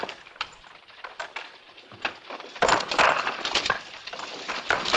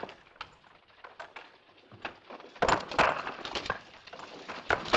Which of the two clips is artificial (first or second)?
first